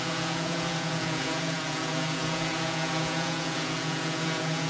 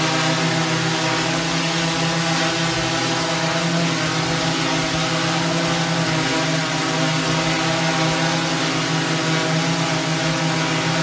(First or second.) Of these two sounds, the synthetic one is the first